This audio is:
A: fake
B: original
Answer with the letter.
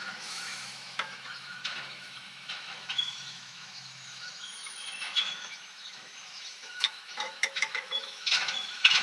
A